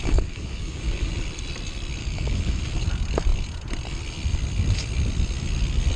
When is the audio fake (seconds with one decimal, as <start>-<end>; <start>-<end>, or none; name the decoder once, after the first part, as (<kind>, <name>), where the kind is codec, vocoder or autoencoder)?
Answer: 0.0-1.1 (codec, DAC); 2.0-2.6